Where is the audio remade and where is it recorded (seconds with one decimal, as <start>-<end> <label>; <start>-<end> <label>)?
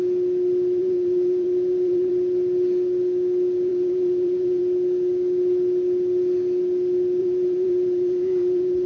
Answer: 0.0-0.8 recorded; 0.8-2.1 remade; 2.1-3.7 recorded; 3.7-4.6 remade; 4.6-7.2 recorded; 7.2-8.9 remade